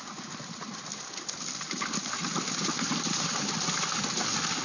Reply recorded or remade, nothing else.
recorded